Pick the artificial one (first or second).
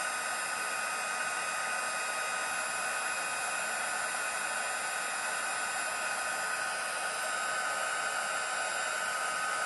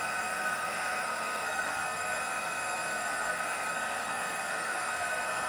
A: second